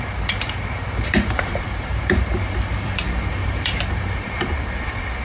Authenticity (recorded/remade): remade